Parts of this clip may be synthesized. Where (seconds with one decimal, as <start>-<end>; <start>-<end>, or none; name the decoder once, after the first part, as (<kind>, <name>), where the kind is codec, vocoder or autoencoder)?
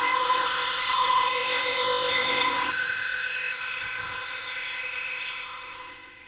0.0-6.3 (codec, ZipCodec)